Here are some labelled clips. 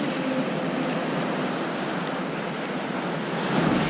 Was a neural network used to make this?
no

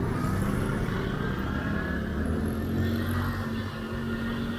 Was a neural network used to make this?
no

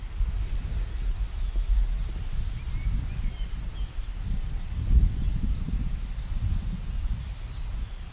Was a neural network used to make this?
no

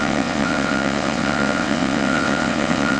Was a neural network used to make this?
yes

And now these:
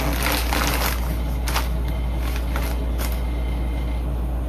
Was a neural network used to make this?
no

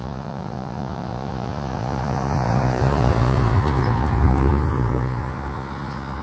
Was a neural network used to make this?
yes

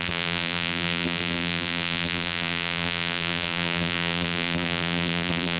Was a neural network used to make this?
yes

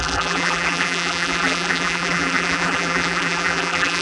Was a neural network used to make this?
yes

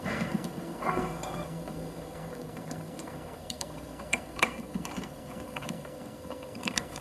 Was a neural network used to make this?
yes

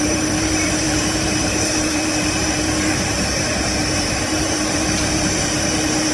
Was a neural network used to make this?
yes